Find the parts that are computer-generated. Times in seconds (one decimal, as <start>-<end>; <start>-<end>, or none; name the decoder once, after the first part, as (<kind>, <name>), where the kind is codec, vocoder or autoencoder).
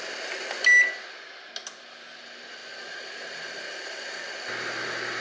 2.6-3.7 (vocoder, BigVGAN v2)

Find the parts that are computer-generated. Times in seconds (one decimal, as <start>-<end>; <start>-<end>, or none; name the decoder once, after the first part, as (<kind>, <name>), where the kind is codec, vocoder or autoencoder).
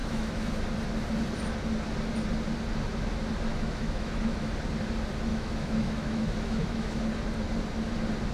0.0-0.5 (autoencoder, DAC-VAE); 3.5-4.5; 5.3-7.0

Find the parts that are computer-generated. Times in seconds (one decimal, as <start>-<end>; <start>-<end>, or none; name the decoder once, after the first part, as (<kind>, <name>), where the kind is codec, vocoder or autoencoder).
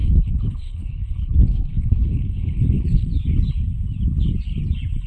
0.0-3.1 (codec, HILCodec)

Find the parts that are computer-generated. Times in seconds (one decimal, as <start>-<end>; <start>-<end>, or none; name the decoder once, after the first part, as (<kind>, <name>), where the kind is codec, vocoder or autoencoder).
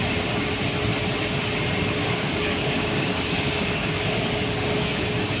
2.0-5.0 (codec, DAC)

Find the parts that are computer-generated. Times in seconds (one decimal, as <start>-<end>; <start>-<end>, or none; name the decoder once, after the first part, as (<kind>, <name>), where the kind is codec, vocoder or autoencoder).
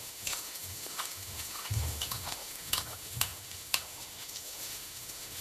0.0-5.4 (autoencoder, DAC-VAE)